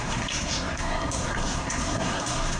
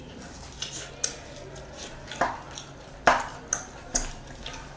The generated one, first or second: first